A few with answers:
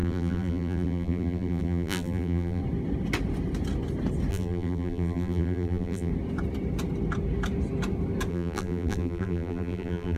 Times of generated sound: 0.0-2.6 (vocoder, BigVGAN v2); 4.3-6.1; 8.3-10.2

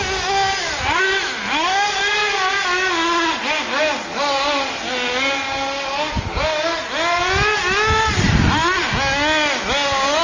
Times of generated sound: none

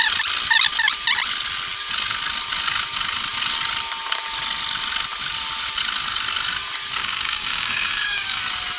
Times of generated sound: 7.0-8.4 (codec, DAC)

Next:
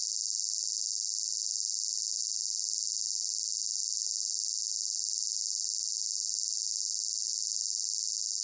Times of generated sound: none

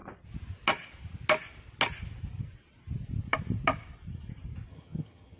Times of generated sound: 4.7-5.4 (vocoder, HiFi-GAN)